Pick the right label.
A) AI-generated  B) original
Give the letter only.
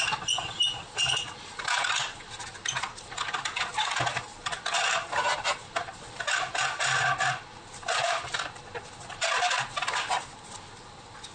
B